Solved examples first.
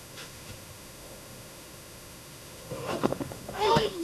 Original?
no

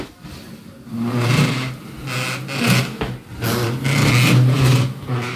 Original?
yes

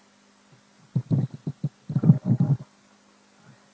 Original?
yes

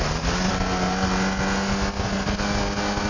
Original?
yes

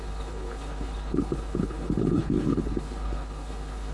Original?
no